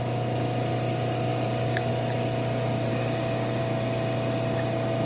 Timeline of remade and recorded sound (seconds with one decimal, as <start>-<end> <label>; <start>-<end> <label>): 0.0-1.3 recorded; 1.3-1.9 remade; 1.9-2.9 recorded; 2.9-3.6 remade; 3.6-5.0 recorded

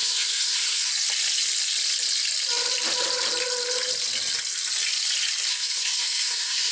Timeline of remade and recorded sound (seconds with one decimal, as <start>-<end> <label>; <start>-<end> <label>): 0.0-0.9 remade; 0.9-5.5 recorded; 5.5-6.7 remade

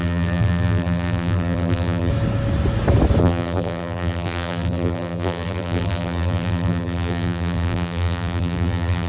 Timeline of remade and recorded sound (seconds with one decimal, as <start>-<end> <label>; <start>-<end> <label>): 0.0-2.1 remade; 2.1-3.2 recorded; 3.2-9.1 remade

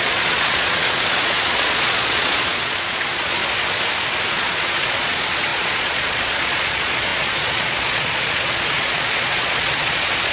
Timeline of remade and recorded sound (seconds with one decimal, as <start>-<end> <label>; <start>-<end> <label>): 0.0-3.4 remade; 3.4-4.3 recorded; 4.3-10.3 remade

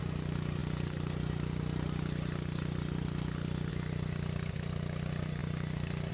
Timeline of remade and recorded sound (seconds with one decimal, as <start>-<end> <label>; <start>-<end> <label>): 0.0-6.1 recorded

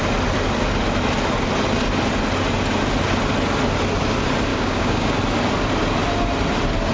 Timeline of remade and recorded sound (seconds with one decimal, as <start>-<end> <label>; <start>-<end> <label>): 0.0-4.5 recorded; 4.5-5.2 remade; 5.2-6.9 recorded

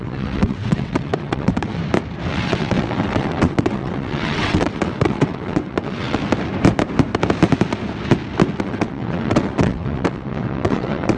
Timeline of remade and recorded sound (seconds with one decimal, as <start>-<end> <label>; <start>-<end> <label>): 0.0-1.8 remade; 1.8-2.3 recorded; 2.3-6.2 remade; 6.2-8.6 recorded; 8.6-11.2 remade